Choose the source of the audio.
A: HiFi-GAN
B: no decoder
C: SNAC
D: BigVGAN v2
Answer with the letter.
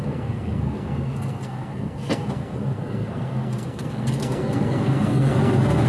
C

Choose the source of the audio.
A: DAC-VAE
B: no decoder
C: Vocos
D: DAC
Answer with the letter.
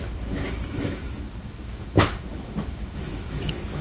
A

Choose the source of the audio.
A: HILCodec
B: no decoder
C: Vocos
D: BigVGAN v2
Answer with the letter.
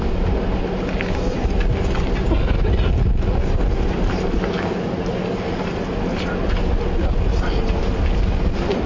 B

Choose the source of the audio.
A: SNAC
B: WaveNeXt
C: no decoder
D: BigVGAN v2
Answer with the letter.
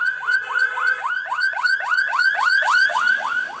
B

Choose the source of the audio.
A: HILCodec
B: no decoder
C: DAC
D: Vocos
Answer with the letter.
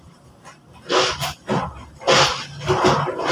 B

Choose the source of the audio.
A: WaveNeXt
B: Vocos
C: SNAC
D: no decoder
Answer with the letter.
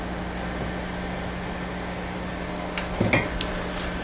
D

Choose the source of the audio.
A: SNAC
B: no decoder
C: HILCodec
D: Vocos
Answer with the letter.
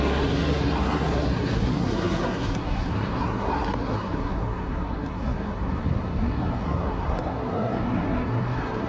A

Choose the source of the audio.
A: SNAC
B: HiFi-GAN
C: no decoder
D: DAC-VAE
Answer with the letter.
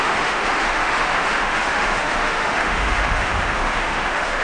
D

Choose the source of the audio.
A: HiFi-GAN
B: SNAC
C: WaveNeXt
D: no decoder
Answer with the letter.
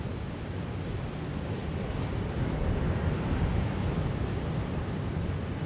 D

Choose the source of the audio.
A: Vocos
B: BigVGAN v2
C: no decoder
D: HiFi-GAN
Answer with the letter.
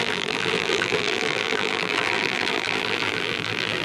B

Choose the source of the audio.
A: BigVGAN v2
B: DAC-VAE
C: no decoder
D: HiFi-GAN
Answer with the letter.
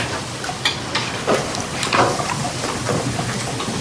C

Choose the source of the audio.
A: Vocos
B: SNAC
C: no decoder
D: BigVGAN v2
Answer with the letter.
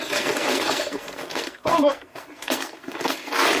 B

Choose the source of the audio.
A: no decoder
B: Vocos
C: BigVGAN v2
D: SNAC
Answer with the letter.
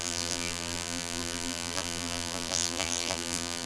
C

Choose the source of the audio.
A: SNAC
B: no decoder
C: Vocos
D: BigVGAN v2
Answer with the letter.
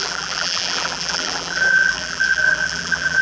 D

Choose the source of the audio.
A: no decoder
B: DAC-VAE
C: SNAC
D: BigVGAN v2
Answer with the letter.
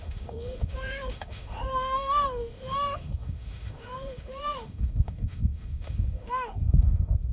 B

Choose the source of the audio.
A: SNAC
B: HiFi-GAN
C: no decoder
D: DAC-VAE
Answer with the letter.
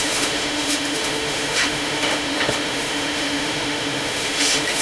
D